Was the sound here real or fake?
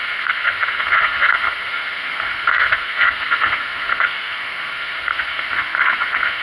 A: fake